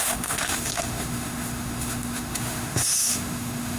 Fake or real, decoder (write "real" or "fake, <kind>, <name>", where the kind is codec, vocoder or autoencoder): fake, autoencoder, DAC-VAE